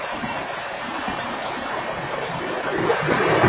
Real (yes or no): no